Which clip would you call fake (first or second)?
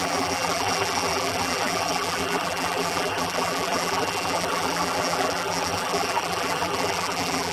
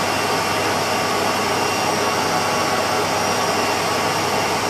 first